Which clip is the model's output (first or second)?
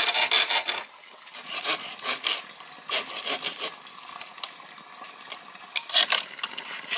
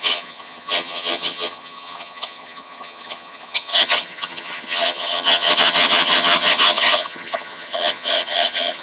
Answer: second